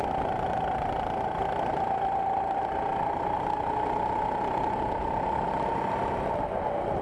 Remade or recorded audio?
recorded